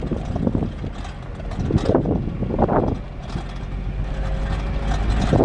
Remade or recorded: recorded